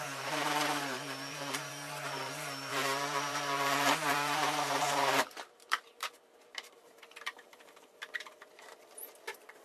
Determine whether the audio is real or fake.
fake